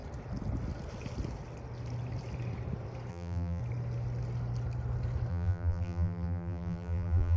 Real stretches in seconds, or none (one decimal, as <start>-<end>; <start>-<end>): 0.0-3.1; 3.6-5.3